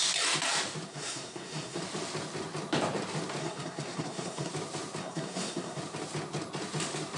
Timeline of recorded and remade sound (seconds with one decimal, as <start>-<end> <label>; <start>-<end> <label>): 0.0-0.9 recorded; 0.9-1.8 remade; 1.8-3.4 recorded; 3.4-4.5 remade; 4.5-5.0 recorded; 5.0-5.8 remade; 5.8-7.2 recorded

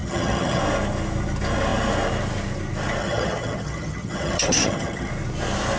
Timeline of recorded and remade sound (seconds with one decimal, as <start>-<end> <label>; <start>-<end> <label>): 0.0-0.6 remade; 0.6-3.0 recorded; 3.0-5.1 remade; 5.1-5.8 recorded

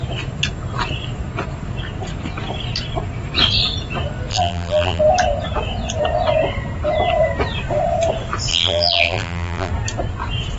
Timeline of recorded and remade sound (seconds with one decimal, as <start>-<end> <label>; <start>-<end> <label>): 0.0-4.3 recorded; 4.3-5.0 remade; 5.0-8.5 recorded; 8.5-9.7 remade; 9.7-10.6 recorded

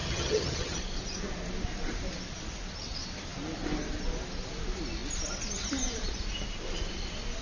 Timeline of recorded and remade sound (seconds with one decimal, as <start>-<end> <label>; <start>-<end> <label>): 0.0-0.8 remade; 0.8-7.4 recorded